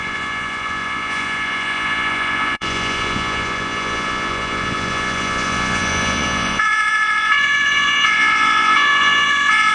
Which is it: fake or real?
fake